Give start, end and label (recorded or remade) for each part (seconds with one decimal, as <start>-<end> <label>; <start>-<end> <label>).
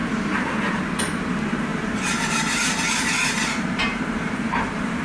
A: 0.0-0.8 remade; 0.8-1.7 recorded; 1.7-5.0 remade